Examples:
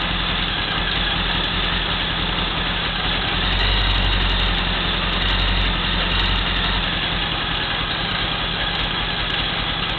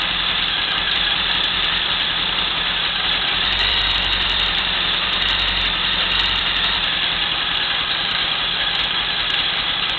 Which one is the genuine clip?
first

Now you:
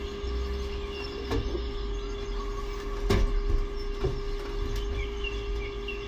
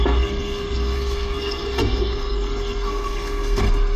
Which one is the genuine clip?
first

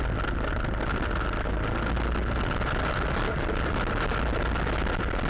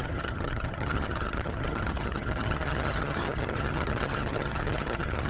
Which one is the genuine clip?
first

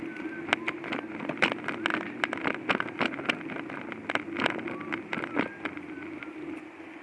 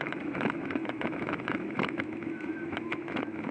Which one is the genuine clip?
first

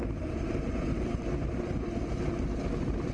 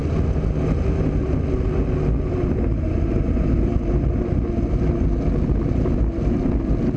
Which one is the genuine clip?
second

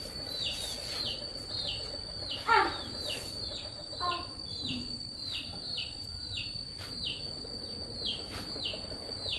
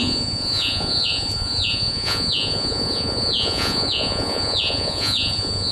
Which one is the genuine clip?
first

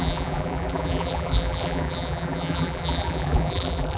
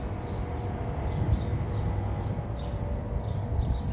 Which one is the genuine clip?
second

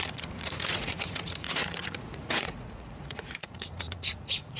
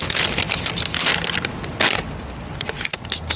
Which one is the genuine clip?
second